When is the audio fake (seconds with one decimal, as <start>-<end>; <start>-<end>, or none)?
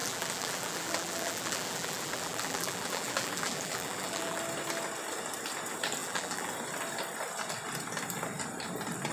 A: 0.0-4.4; 6.0-6.5